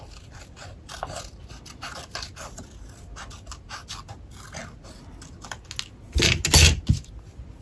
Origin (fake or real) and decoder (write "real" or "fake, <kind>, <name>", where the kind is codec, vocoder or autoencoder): real